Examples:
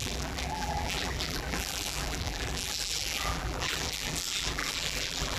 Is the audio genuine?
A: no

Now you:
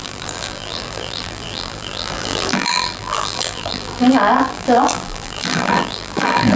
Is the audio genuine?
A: no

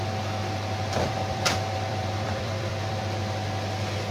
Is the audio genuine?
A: no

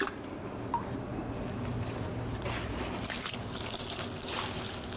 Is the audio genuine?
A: yes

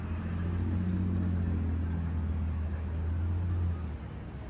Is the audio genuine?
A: yes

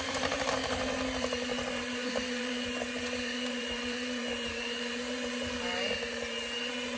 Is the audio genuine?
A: no